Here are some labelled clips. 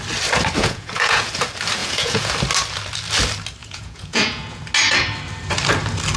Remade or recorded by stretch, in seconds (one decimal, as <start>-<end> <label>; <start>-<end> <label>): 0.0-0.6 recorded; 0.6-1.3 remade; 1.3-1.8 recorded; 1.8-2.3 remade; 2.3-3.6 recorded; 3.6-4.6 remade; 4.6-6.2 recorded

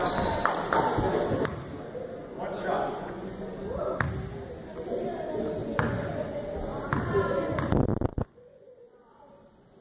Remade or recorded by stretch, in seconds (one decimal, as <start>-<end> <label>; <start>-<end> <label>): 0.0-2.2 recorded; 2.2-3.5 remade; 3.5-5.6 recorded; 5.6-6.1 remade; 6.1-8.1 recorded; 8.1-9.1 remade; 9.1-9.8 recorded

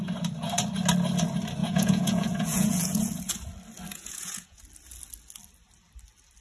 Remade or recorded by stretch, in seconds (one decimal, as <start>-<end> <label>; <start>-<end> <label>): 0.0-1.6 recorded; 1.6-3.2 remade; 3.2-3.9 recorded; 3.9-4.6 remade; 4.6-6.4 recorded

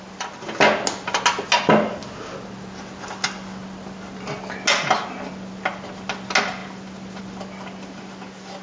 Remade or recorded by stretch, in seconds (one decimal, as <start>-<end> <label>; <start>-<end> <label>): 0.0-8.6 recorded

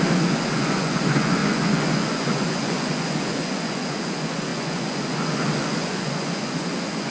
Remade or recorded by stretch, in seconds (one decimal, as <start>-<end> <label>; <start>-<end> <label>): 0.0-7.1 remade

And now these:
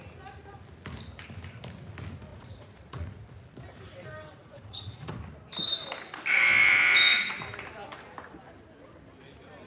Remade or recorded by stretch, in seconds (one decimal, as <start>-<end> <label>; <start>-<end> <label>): 0.0-2.3 recorded; 2.3-3.2 remade; 3.2-4.4 recorded; 4.4-5.1 remade; 5.1-6.6 recorded; 6.6-7.3 remade; 7.3-9.7 recorded